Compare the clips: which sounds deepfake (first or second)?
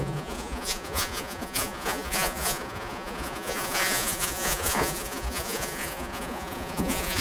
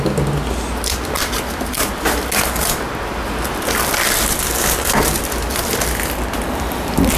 first